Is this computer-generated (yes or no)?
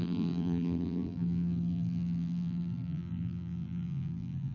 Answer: yes